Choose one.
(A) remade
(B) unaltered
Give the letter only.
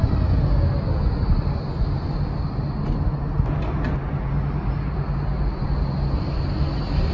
B